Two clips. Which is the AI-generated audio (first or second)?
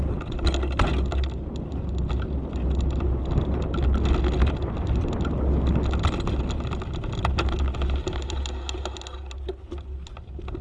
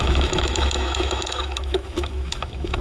second